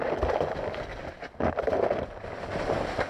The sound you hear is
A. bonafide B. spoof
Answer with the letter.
A